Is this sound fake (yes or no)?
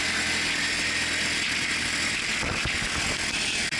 no